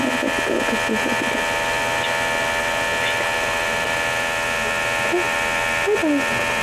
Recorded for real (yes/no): yes